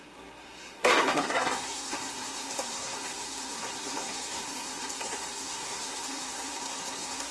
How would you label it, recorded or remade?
remade